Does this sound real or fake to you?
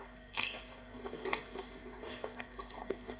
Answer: fake